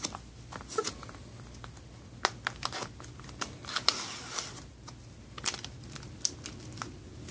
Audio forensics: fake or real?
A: real